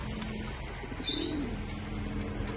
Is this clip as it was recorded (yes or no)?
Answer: yes